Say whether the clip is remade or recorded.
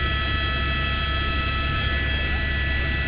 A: recorded